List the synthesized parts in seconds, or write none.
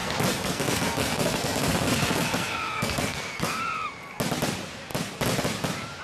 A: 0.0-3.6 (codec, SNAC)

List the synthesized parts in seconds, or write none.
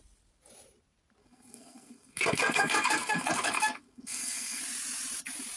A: 1.2-4.6 (codec, SNAC)